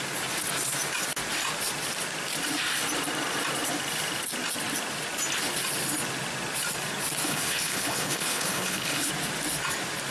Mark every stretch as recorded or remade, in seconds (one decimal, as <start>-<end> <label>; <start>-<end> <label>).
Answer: 0.0-7.2 recorded; 7.2-9.1 remade; 9.1-10.1 recorded